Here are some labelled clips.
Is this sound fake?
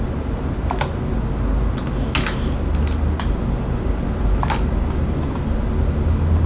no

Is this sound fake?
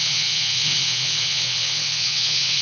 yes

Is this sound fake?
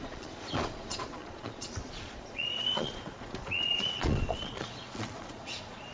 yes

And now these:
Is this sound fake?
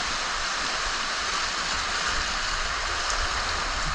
no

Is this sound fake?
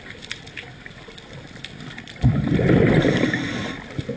no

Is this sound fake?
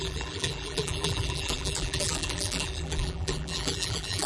yes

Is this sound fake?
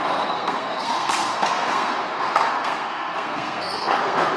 yes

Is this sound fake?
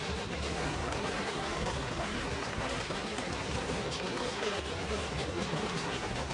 yes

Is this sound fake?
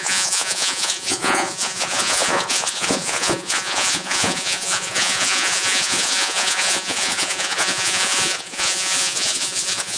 yes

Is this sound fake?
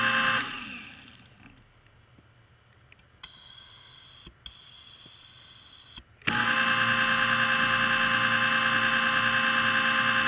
no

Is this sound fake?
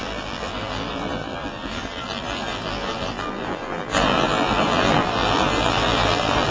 yes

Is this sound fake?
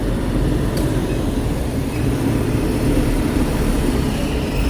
yes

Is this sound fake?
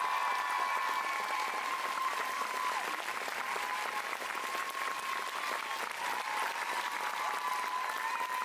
no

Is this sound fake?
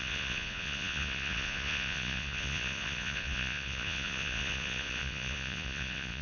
yes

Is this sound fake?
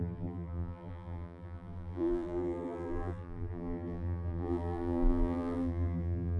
yes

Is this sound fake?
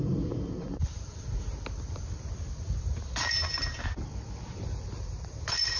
no